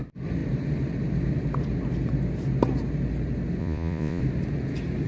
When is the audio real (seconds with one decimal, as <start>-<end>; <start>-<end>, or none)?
0.0-3.6; 4.2-5.1